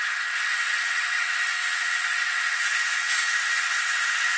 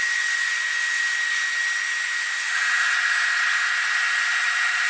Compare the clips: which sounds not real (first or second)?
first